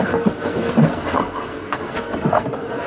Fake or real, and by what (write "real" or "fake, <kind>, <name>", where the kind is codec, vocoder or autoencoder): fake, codec, SNAC